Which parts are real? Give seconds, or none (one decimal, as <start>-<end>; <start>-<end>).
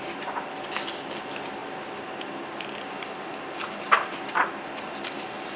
0.0-5.6